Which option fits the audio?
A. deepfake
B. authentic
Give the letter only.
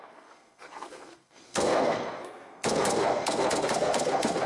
A